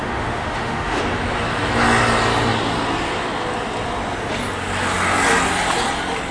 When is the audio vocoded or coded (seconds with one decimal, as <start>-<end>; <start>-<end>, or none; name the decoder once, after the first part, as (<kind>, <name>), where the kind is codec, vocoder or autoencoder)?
0.0-1.0 (autoencoder, DAC-VAE)